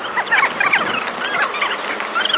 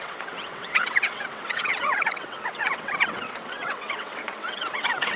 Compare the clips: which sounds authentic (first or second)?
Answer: first